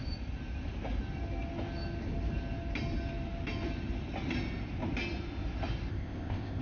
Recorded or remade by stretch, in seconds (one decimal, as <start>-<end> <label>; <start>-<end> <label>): 0.0-5.9 recorded; 5.9-6.6 remade